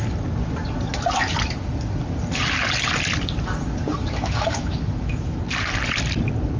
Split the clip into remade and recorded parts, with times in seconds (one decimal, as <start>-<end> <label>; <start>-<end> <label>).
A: 0.0-4.0 recorded; 4.0-5.4 remade; 5.4-6.6 recorded